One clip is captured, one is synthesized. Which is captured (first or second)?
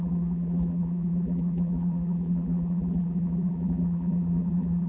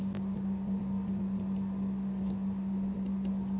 second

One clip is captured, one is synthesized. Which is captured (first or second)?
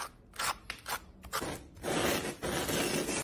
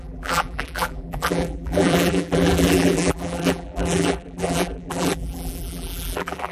first